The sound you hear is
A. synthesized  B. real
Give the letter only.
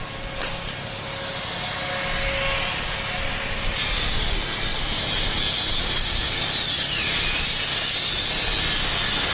B